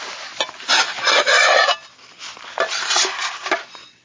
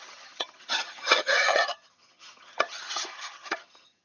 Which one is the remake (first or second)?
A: second